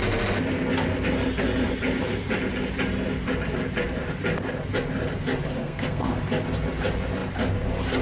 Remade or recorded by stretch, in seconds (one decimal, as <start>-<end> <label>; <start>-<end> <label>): 0.0-5.6 recorded; 5.6-6.2 remade; 6.2-8.0 recorded

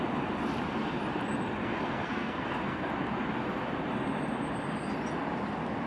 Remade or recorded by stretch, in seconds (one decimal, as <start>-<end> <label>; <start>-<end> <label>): 0.0-1.6 recorded; 1.6-2.9 remade; 2.9-5.9 recorded

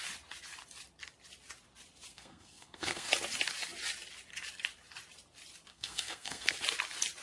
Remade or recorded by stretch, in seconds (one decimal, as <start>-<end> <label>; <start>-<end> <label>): 0.0-2.1 recorded; 2.1-3.1 remade; 3.1-5.7 recorded; 5.7-6.6 remade; 6.6-7.2 recorded

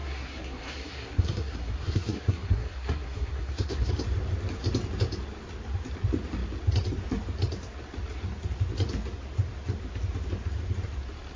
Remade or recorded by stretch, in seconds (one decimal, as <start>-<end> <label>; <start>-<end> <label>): 0.0-3.9 remade; 3.9-11.4 recorded

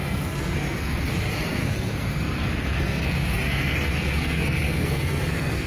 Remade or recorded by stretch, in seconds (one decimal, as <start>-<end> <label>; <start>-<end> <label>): 0.0-5.7 remade

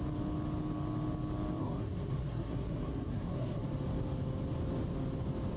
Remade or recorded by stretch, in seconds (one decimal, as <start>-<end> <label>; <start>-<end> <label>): 0.0-1.6 recorded; 1.6-3.6 remade; 3.6-5.6 recorded